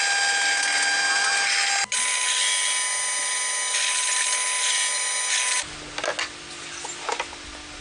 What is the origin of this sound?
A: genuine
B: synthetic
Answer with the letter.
A